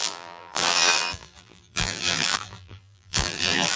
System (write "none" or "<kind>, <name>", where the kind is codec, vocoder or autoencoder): vocoder, BigVGAN v2